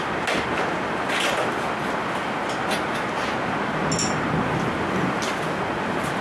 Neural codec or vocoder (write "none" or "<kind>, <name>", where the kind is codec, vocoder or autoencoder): none